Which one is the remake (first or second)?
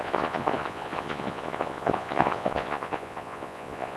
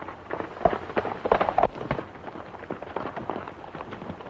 first